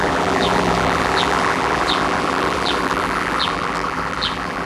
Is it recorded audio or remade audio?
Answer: remade